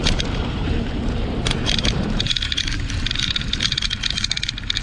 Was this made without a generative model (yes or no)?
no